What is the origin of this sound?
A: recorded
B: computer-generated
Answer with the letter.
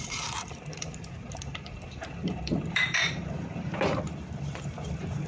B